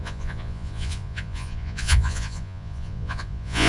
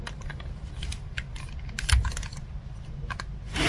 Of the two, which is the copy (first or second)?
first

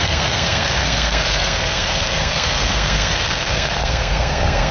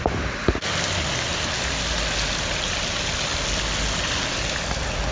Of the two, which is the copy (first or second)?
first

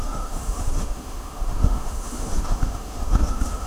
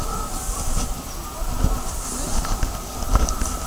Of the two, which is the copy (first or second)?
first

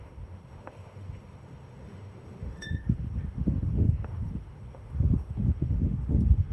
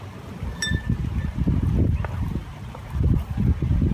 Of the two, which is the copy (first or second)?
first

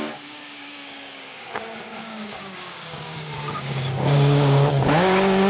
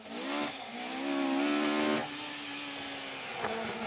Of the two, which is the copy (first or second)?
first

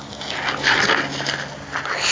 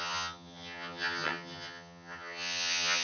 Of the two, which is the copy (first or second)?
second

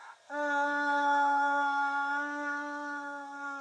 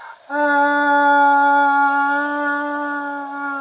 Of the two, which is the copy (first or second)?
first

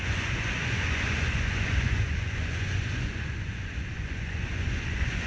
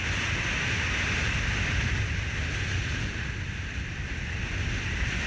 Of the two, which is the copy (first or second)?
first